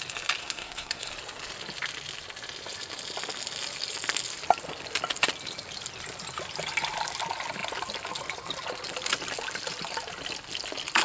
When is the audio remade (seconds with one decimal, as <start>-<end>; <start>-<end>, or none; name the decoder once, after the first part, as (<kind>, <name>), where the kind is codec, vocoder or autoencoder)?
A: 0.4-1.1 (codec, SNAC)